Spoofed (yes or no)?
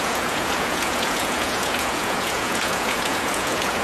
yes